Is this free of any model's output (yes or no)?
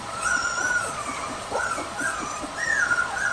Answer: no